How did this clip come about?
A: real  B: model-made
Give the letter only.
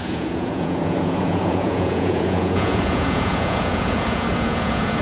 B